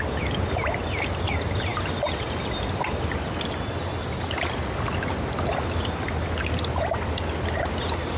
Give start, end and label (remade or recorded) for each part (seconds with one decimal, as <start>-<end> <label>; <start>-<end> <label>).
0.0-8.2 recorded